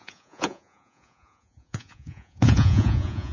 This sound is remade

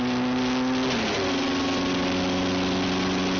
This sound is recorded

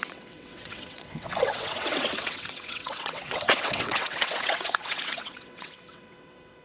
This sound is remade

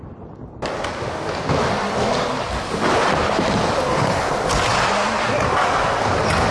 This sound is recorded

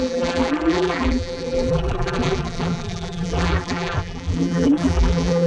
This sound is remade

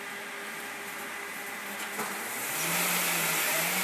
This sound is recorded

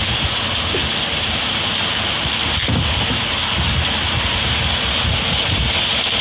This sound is recorded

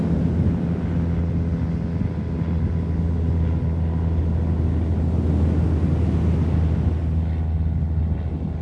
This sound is recorded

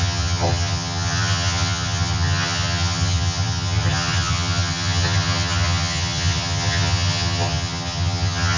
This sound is remade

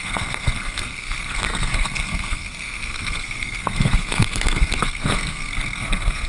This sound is remade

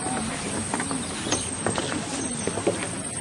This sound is recorded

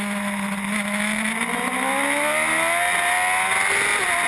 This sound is recorded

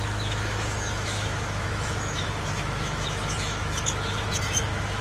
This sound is remade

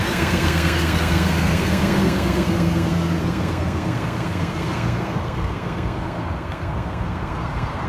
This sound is remade